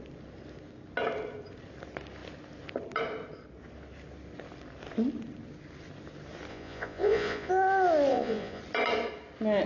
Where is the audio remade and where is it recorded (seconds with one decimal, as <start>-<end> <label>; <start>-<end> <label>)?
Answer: 0.0-6.5 recorded; 6.5-7.5 remade; 7.5-8.1 recorded; 8.1-8.6 remade; 8.6-9.7 recorded